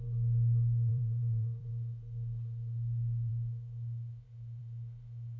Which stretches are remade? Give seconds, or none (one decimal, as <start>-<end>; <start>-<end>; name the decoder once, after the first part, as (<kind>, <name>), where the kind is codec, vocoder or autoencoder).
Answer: 0.9-1.7 (vocoder, BigVGAN v2)